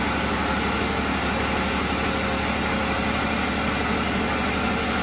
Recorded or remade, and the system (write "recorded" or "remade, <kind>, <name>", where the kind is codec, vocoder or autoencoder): recorded